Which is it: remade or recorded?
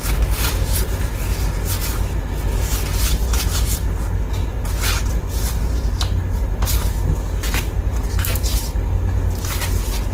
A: recorded